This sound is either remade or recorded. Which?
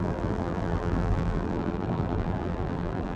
remade